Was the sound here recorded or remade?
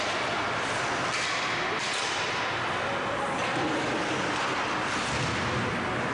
recorded